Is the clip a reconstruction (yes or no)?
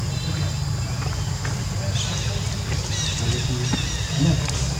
no